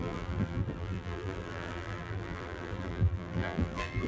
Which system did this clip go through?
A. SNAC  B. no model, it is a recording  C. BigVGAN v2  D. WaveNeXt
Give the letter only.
C